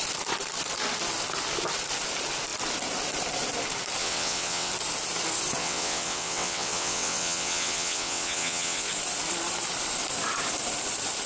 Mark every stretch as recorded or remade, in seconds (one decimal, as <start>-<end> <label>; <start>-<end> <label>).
0.0-4.0 recorded; 4.0-4.7 remade; 4.7-5.6 recorded; 5.6-8.9 remade; 8.9-11.3 recorded

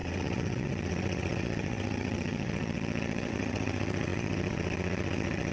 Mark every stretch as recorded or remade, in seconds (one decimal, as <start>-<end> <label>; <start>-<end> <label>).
0.0-5.5 remade

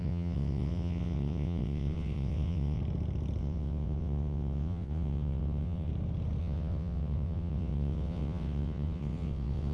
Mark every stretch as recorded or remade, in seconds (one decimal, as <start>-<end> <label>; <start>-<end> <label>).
0.0-2.8 remade; 2.8-3.4 recorded; 3.4-5.9 remade; 5.9-6.4 recorded; 6.4-9.7 remade

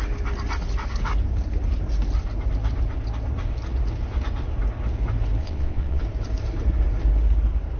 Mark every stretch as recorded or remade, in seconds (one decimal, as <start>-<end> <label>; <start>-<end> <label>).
0.0-5.4 recorded; 5.4-6.0 remade; 6.0-7.8 recorded

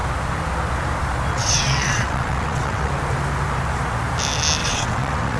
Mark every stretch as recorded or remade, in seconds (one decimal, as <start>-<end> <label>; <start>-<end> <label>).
0.0-1.3 recorded; 1.3-2.9 remade; 2.9-4.6 recorded; 4.6-5.4 remade

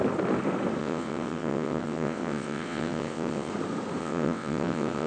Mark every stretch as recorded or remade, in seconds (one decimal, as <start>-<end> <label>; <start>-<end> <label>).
0.0-0.8 recorded; 0.8-3.5 remade; 3.5-4.0 recorded; 4.0-5.1 remade

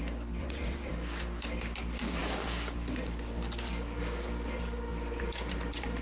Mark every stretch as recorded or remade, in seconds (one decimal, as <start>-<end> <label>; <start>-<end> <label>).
0.0-0.4 recorded; 0.4-0.9 remade; 0.9-6.0 recorded

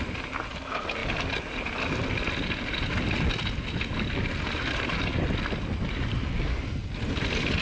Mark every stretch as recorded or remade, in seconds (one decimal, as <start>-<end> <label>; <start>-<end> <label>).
0.0-7.6 recorded